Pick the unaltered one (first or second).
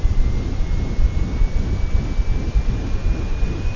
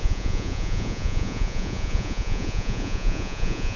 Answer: first